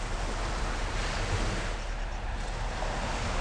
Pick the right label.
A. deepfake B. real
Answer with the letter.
B